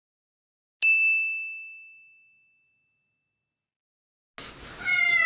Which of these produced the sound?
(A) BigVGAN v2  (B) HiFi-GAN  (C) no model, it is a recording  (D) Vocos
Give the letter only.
C